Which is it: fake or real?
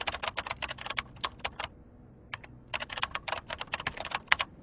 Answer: real